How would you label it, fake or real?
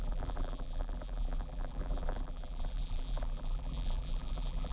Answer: fake